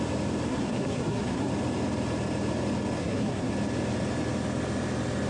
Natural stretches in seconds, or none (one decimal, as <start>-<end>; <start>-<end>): 0.0-0.5; 1.5-3.0; 3.5-5.3